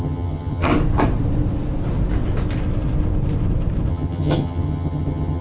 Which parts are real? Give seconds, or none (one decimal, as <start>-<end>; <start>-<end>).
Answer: 0.7-3.9

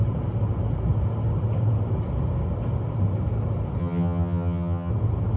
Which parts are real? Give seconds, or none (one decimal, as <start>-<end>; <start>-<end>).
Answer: 0.0-3.8; 4.9-5.4

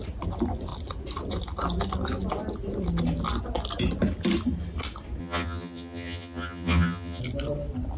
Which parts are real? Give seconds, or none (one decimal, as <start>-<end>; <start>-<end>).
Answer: 0.0-5.2; 7.2-8.0

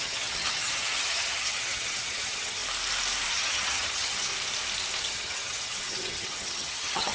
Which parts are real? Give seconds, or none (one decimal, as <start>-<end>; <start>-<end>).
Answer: 2.6-3.3; 4.3-5.0